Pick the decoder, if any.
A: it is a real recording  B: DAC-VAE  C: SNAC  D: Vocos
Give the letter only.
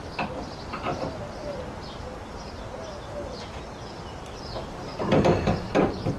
A